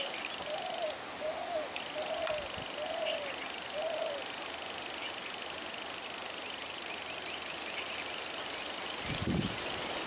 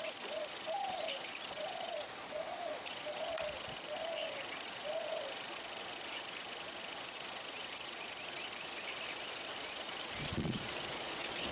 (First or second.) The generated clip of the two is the second